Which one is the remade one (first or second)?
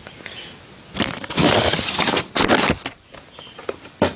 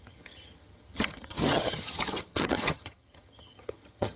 second